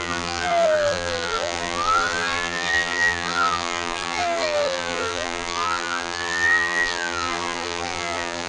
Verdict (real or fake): fake